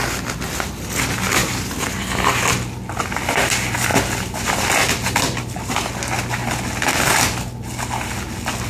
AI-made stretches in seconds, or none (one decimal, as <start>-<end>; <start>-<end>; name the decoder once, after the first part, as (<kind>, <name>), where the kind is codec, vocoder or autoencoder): none